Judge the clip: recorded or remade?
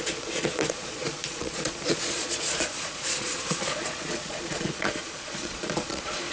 remade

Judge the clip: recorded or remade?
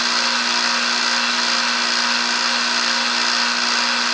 recorded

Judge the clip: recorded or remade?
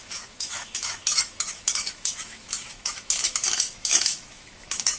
remade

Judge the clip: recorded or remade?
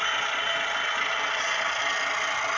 recorded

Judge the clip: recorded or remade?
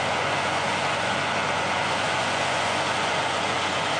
remade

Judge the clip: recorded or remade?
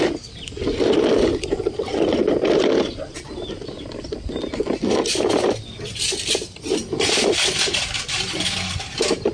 recorded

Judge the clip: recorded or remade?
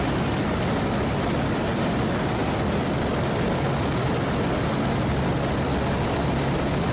recorded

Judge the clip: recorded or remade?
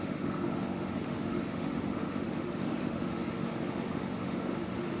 remade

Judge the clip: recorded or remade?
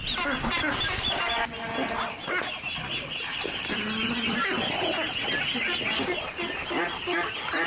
recorded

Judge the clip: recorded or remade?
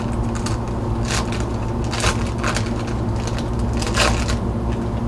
recorded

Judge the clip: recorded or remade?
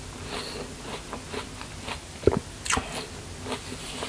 recorded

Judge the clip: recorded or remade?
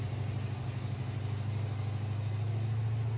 recorded